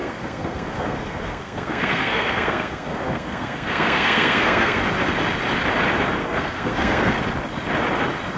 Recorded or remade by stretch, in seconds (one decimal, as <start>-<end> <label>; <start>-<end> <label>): 0.0-4.8 remade; 4.8-6.2 recorded; 6.2-7.2 remade; 7.2-8.4 recorded